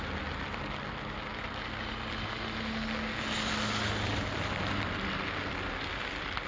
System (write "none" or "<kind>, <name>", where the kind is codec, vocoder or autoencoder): none